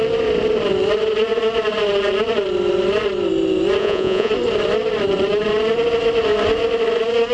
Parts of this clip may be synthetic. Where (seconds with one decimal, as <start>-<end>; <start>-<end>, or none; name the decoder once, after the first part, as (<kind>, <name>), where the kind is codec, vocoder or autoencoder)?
3.8-4.3 (vocoder, Vocos)